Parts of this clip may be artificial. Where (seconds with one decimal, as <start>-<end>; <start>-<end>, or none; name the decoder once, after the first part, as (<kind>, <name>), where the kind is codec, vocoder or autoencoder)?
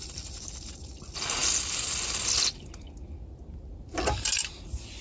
none